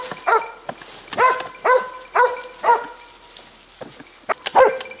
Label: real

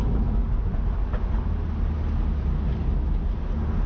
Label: real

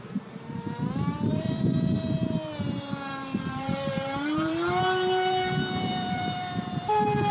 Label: fake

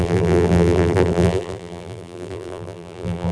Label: fake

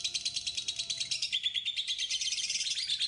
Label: real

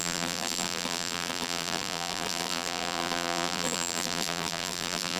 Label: fake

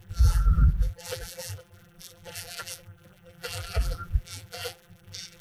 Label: fake